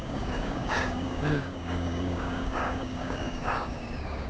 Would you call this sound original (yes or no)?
no